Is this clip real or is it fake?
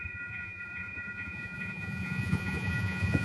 fake